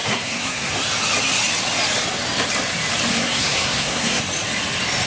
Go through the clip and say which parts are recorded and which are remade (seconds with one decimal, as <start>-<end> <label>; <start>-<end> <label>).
0.0-0.7 remade; 0.7-3.1 recorded; 3.1-4.2 remade; 4.2-5.1 recorded